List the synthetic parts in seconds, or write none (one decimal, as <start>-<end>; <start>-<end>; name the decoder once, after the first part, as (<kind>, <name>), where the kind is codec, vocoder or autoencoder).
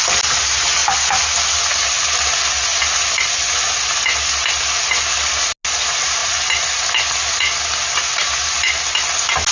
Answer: 6.2-6.8 (vocoder, BigVGAN v2)